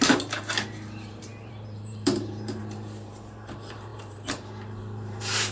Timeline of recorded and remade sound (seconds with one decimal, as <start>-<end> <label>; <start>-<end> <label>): 0.0-5.5 remade